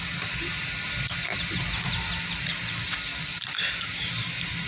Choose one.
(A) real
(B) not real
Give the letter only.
A